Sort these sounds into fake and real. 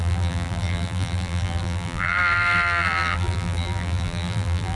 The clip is fake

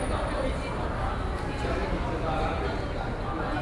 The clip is real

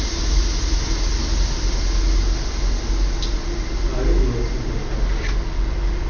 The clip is real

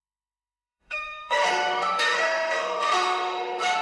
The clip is fake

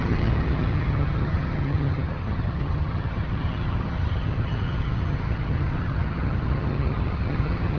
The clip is fake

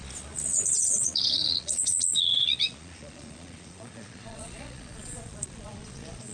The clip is fake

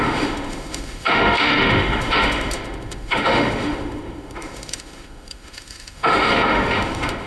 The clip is fake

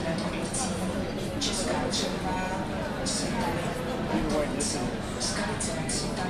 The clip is real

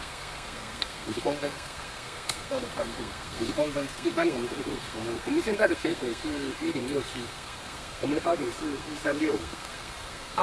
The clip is fake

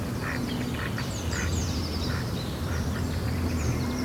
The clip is fake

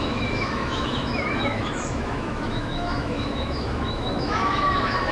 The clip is fake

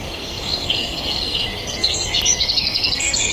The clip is fake